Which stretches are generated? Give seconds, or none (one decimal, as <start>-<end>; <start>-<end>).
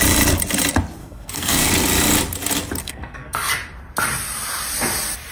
1.0-1.7; 2.8-3.5